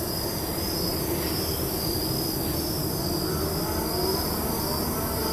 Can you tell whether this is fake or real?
real